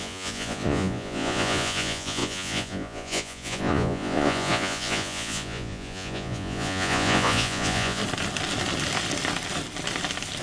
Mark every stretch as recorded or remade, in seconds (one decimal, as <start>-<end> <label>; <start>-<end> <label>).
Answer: 0.0-8.0 remade; 8.0-10.4 recorded